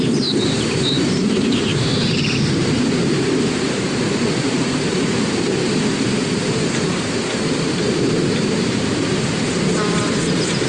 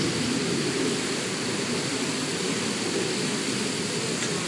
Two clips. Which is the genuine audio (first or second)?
second